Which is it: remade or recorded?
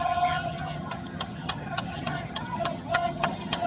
remade